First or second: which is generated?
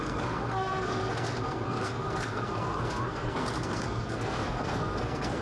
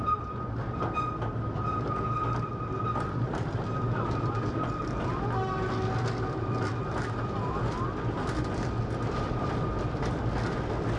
first